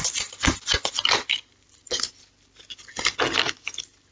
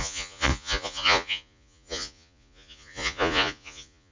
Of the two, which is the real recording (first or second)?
first